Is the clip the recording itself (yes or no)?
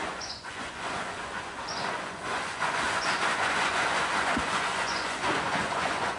no